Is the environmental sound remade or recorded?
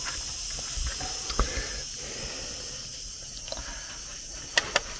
recorded